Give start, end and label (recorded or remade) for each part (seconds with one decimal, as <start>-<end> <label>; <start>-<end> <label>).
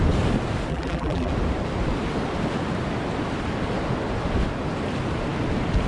0.0-0.7 recorded; 0.7-1.3 remade; 1.3-5.9 recorded